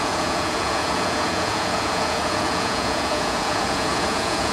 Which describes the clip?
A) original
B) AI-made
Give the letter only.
B